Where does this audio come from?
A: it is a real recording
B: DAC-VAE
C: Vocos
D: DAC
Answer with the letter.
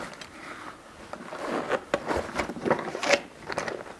A